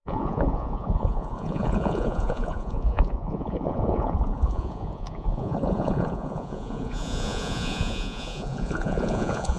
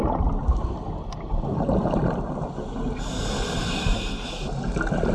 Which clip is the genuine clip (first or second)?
second